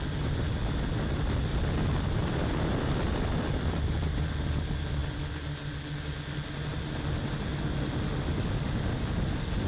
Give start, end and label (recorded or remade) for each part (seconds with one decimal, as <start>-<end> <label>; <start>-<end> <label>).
0.0-1.5 recorded; 1.5-4.6 remade; 4.6-9.7 recorded